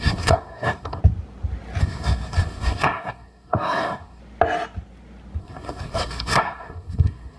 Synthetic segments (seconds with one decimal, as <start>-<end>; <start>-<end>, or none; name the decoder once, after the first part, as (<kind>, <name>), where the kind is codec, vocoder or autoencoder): 0.0-1.0 (codec, SNAC); 1.8-4.2; 5.4-7.4